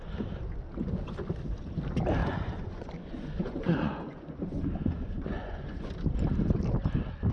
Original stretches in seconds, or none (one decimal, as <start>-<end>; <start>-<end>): 0.0-2.2; 5.9-7.3